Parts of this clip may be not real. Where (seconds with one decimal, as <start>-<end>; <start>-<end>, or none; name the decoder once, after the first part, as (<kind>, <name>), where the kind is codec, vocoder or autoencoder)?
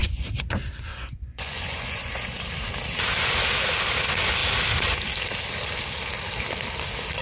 0.0-0.5 (vocoder, Vocos); 0.9-2.4